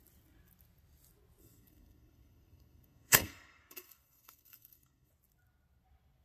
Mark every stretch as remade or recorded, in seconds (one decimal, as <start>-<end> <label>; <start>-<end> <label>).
0.0-1.4 recorded; 1.4-5.1 remade; 5.1-6.2 recorded